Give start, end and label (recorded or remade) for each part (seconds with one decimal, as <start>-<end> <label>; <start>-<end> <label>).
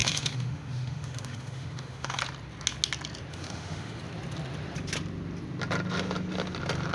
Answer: 0.0-2.2 remade; 2.2-3.3 recorded; 3.3-4.0 remade; 4.0-6.9 recorded